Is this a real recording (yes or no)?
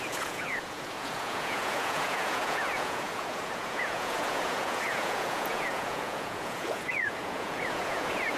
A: no